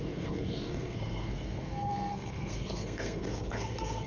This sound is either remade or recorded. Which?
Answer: remade